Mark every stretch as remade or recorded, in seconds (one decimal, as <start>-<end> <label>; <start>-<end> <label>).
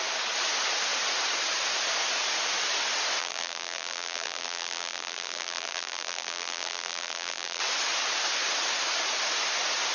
0.0-3.2 recorded; 3.2-7.6 remade; 7.6-9.9 recorded